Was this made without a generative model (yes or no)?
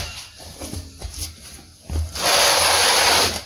yes